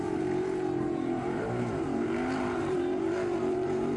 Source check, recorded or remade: remade